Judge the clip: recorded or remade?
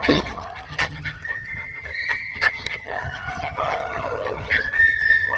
remade